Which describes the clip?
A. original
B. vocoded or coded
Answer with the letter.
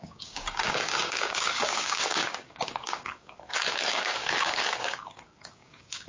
B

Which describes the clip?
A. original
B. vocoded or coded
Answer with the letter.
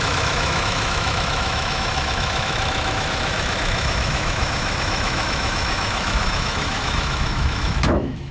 B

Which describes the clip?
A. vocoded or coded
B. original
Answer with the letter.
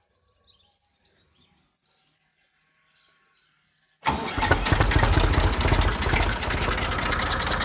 B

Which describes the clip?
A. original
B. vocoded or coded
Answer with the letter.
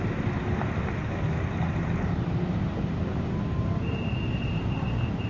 A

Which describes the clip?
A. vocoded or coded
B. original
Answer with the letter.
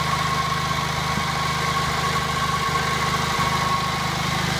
B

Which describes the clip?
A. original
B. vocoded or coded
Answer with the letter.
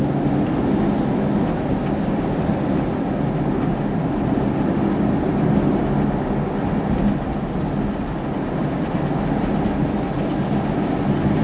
A